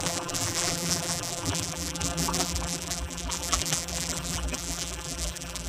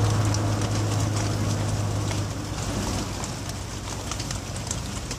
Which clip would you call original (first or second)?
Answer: second